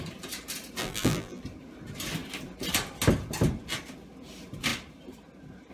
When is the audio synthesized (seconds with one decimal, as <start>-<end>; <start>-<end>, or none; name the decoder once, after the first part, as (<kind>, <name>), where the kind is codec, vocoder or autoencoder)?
0.8-1.4 (vocoder, BigVGAN v2)